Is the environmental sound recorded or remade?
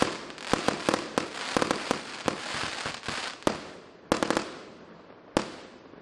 recorded